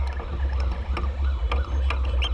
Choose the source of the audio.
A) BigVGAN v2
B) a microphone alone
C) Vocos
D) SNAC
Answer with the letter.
B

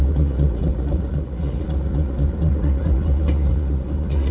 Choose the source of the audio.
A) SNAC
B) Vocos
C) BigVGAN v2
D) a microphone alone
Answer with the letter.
B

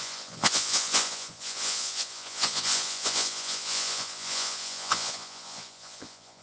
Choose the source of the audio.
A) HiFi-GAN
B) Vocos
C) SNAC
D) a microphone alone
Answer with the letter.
B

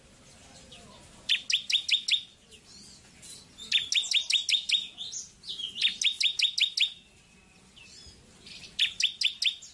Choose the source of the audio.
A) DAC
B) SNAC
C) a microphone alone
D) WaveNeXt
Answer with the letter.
C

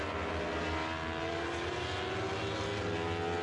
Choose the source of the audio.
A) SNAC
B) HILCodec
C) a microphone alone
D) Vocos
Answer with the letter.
C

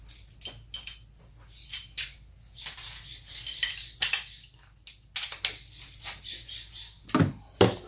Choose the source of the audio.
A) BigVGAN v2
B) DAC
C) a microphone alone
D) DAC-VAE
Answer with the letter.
C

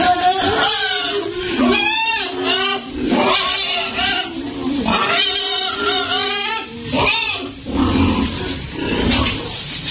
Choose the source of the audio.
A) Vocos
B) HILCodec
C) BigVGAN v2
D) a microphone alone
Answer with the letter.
C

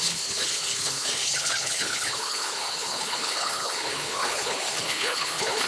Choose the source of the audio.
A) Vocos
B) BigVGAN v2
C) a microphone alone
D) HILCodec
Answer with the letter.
D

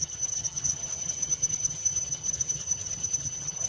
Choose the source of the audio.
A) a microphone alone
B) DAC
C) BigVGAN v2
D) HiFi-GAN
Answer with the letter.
D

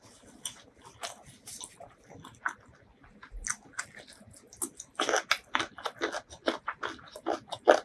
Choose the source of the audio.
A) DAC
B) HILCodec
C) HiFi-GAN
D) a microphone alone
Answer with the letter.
D